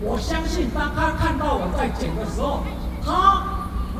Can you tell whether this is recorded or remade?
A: recorded